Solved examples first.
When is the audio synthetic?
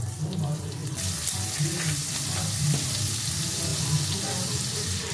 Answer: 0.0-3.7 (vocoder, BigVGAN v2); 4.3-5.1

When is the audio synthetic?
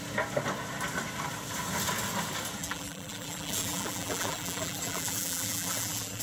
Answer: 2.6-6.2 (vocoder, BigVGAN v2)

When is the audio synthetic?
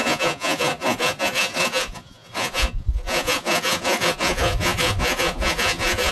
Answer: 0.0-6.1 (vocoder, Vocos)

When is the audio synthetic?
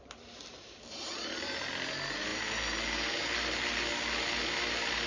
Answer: none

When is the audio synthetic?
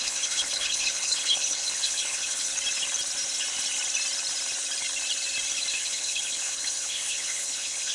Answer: 0.0-2.5 (codec, HILCodec); 5.7-7.9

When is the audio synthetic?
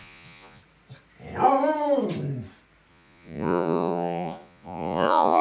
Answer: 0.0-0.6 (vocoder, Vocos); 2.9-5.4